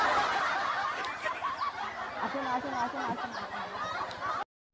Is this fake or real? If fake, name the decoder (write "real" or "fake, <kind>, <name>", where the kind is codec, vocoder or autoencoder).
real